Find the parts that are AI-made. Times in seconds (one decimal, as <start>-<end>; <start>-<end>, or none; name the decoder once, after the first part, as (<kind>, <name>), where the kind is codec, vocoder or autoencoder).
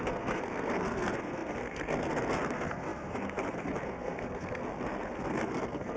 0.0-6.0 (codec, SNAC)